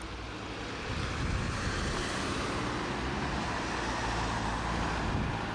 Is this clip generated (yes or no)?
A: no